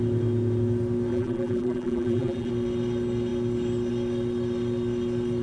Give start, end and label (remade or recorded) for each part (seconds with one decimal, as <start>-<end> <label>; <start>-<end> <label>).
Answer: 0.0-1.1 recorded; 1.1-2.5 remade; 2.5-5.4 recorded